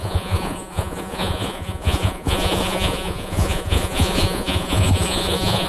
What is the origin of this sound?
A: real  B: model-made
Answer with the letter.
B